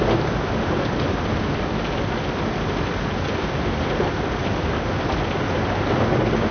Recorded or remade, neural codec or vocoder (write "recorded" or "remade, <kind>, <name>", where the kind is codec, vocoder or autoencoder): recorded